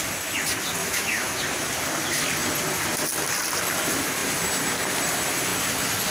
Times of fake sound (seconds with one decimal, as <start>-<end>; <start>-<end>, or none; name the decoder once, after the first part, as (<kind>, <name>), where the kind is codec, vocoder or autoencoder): 0.8-1.4 (autoencoder, DAC-VAE)